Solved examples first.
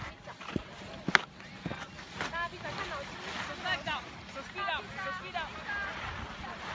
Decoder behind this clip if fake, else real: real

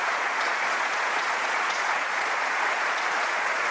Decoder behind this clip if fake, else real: fake, vocoder, Vocos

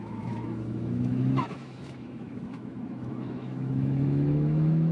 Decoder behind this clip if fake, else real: fake, autoencoder, DAC-VAE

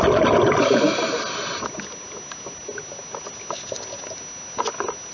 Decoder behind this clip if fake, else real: real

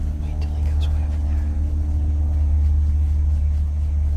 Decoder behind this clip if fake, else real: real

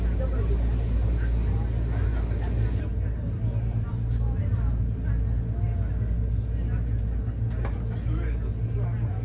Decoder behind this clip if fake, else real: real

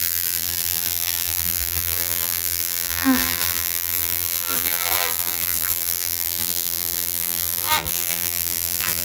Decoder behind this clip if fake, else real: fake, vocoder, BigVGAN v2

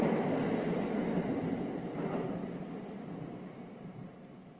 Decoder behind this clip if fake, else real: real